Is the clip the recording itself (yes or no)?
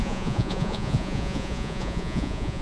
no